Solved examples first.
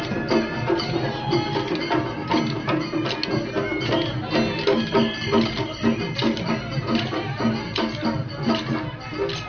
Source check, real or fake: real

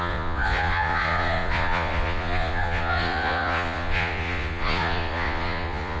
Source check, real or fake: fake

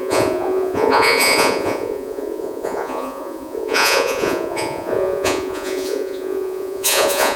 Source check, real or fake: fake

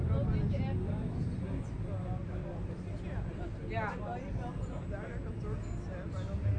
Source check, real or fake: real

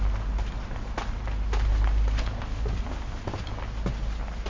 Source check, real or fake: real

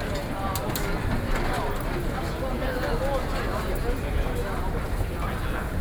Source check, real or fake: real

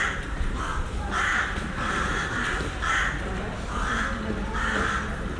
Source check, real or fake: real